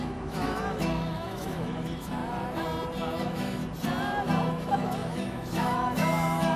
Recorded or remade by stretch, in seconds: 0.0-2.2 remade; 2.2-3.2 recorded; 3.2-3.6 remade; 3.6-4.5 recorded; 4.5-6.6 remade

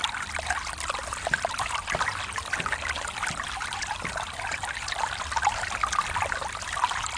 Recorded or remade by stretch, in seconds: 0.0-7.2 recorded

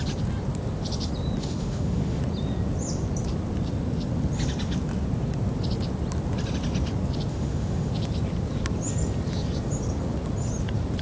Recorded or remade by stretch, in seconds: 0.0-1.4 recorded; 1.4-2.2 remade; 2.2-7.3 recorded; 7.3-7.9 remade; 7.9-11.0 recorded

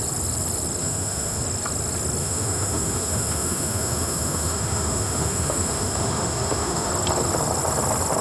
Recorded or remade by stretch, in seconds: 0.0-0.8 recorded; 0.8-1.4 remade; 1.4-2.2 recorded; 2.2-6.9 remade; 6.9-8.2 recorded

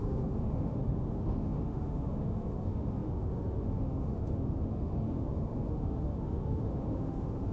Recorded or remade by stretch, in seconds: 0.0-7.5 remade

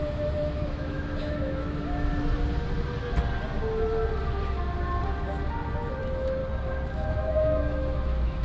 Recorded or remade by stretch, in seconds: 0.0-2.1 remade; 2.1-6.0 recorded; 6.0-6.4 remade; 6.4-6.9 recorded; 6.9-8.4 remade

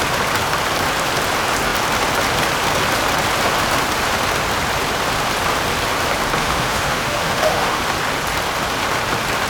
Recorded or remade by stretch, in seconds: 0.0-6.4 recorded; 6.4-7.8 remade; 7.8-9.5 recorded

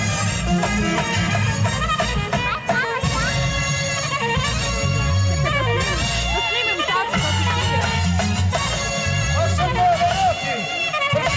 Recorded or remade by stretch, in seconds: 0.0-11.4 recorded